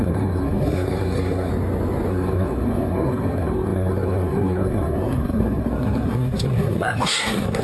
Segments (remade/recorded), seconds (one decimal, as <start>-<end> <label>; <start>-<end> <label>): 0.0-1.5 remade; 1.5-2.1 recorded; 2.1-7.6 remade